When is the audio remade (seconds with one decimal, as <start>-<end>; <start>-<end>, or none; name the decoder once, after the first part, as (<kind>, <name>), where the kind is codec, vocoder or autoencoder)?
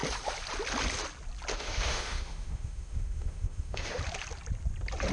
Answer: 1.5-4.0 (autoencoder, DAC-VAE)